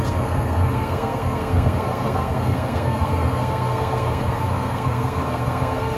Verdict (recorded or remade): remade